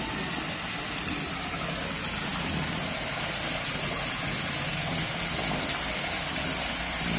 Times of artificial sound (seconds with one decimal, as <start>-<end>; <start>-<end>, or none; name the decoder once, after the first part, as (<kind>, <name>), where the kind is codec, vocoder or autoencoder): none